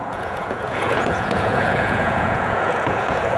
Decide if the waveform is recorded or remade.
remade